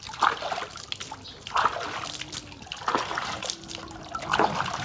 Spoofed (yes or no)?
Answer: no